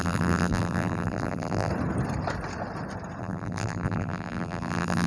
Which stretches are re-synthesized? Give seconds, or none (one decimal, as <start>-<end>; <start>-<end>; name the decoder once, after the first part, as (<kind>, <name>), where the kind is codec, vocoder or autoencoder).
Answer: 0.0-1.7 (vocoder, BigVGAN v2); 3.2-5.1